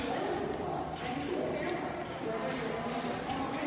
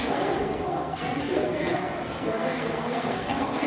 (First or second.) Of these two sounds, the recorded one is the first